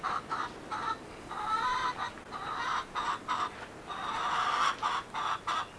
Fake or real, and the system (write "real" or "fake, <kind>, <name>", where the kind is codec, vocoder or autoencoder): real